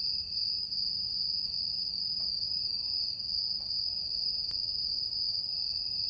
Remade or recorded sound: recorded